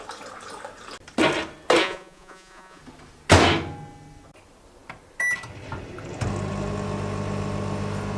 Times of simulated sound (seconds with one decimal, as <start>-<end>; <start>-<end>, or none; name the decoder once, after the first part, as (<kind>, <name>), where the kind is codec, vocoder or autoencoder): 1.8-2.8 (vocoder, Vocos)

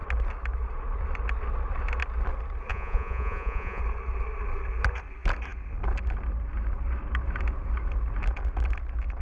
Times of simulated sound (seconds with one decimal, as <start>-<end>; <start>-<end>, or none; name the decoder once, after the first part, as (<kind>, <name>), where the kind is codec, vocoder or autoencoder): 2.7-3.8 (vocoder, Vocos)